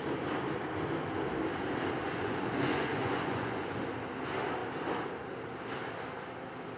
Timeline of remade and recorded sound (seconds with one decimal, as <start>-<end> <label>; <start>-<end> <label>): 0.0-2.0 recorded; 2.0-3.8 remade; 3.8-6.8 recorded